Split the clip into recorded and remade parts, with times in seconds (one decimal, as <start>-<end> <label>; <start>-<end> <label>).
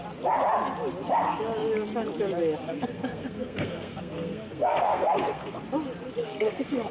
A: 0.0-2.6 recorded; 2.6-5.6 remade; 5.6-6.2 recorded; 6.2-6.9 remade